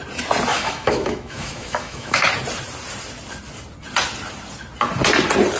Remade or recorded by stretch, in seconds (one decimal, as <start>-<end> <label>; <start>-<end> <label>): 0.0-0.5 recorded; 0.5-2.2 remade; 2.2-5.6 recorded